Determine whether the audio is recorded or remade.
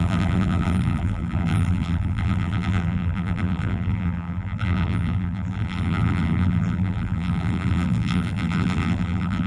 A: remade